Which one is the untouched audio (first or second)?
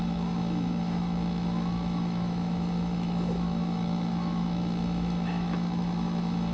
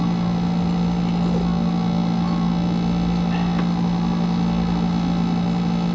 second